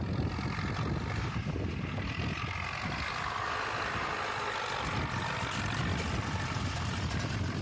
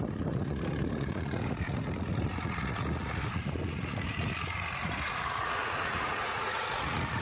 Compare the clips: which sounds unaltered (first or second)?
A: first